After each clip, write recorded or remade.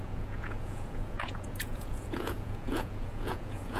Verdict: remade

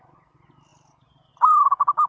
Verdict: recorded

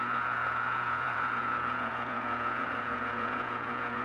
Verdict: remade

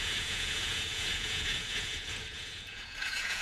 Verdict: remade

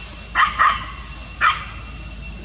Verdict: recorded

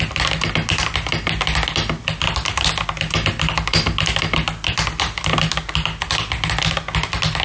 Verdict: recorded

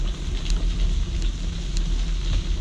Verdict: recorded